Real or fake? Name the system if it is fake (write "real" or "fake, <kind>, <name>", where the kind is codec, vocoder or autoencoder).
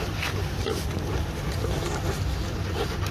real